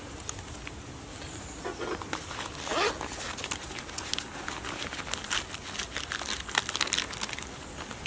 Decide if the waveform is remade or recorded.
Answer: recorded